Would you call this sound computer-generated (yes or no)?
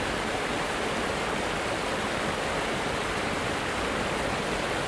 yes